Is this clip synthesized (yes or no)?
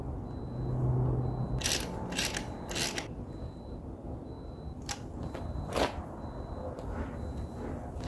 no